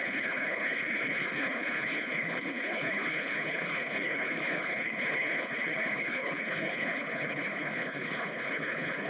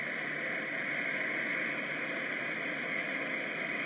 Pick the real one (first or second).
second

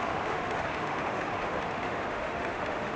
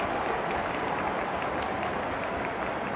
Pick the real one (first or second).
second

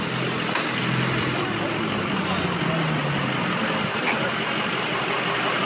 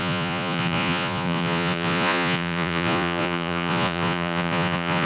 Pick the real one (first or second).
first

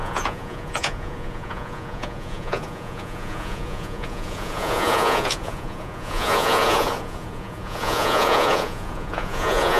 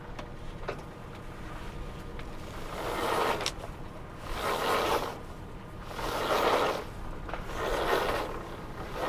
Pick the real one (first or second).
second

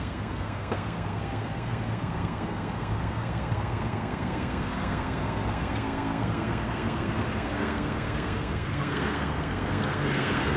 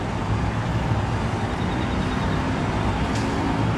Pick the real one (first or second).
second